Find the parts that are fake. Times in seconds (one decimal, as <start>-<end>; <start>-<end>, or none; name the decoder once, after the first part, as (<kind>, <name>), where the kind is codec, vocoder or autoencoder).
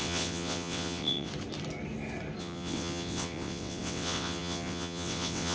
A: 0.0-1.3 (vocoder, WaveNeXt); 2.4-5.5